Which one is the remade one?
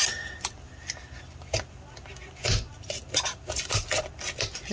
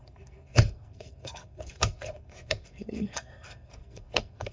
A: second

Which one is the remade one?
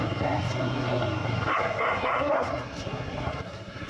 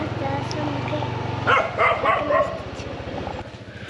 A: first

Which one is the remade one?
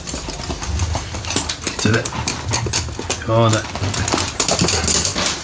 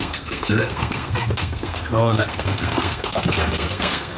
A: second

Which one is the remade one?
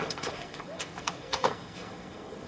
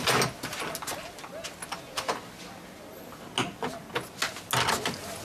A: first